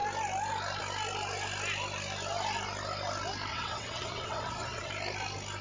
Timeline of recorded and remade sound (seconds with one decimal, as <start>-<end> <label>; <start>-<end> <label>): 0.0-3.5 recorded; 3.5-4.9 remade; 4.9-5.6 recorded